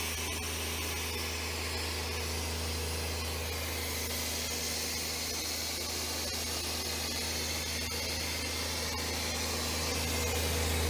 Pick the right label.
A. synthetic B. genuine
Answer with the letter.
B